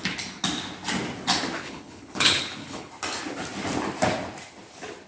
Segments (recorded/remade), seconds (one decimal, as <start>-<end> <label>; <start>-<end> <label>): 0.0-1.6 recorded; 1.6-2.9 remade; 2.9-5.1 recorded